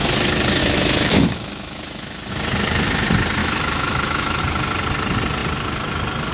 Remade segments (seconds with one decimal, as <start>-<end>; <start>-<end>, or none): 0.6-2.3; 3.4-4.4